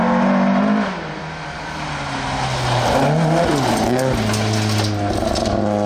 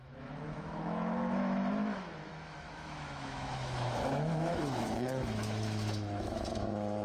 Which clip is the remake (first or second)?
second